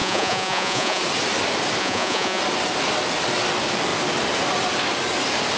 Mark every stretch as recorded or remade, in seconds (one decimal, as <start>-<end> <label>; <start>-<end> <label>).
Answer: 0.0-1.0 remade; 1.0-1.8 recorded; 1.8-2.4 remade; 2.4-5.6 recorded